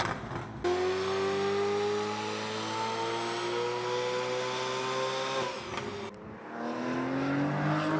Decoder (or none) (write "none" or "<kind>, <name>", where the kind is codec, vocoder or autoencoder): none